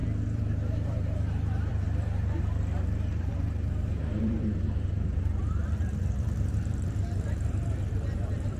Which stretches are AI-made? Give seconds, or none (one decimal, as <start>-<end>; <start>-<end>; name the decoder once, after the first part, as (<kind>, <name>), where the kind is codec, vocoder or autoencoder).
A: 0.0-8.6 (vocoder, BigVGAN v2)